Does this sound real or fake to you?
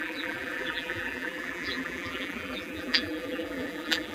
fake